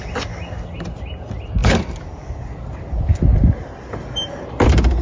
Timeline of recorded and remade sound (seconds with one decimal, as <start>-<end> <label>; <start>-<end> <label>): 0.0-5.0 recorded